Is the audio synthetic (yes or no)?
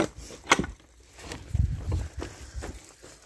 no